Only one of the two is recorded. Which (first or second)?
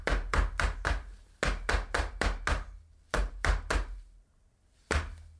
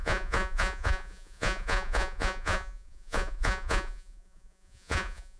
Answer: first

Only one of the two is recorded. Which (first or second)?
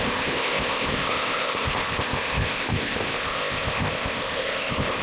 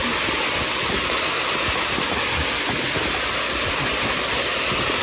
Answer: second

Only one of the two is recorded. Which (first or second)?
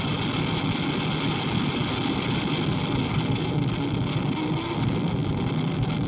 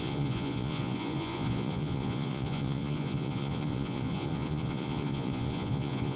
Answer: first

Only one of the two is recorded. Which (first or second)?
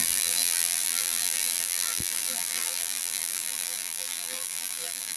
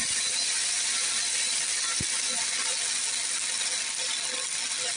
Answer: second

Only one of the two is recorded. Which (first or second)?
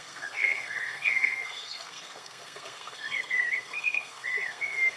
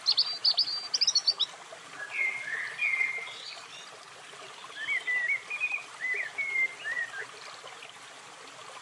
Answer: second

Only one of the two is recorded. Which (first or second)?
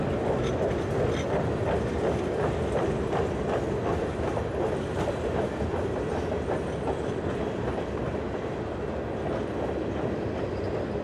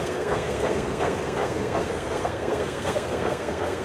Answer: first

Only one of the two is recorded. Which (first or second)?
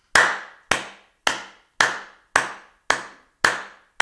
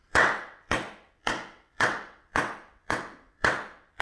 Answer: first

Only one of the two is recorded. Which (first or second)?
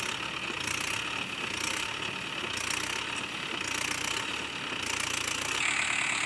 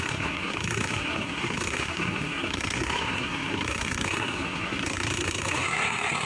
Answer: first